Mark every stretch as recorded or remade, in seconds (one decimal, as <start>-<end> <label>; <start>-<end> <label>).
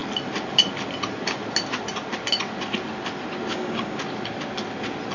0.0-3.5 recorded; 3.5-4.0 remade; 4.0-5.1 recorded